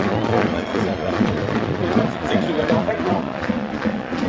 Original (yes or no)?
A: no